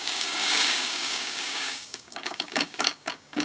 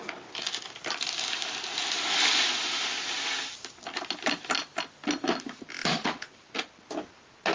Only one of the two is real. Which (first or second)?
second